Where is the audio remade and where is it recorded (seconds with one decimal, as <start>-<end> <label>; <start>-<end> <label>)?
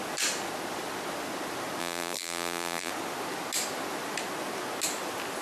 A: 0.0-1.8 recorded; 1.8-2.9 remade; 2.9-5.4 recorded